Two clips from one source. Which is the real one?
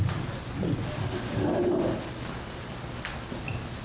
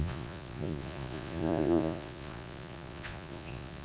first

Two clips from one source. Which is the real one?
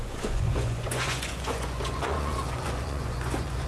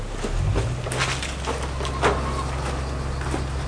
second